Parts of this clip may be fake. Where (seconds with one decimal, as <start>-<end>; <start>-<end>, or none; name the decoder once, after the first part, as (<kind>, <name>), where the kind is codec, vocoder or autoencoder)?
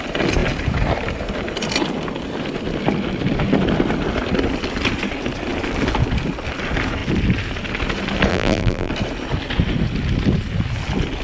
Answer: 8.3-8.9 (vocoder, BigVGAN v2)